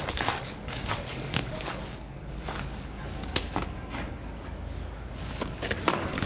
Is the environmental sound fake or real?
fake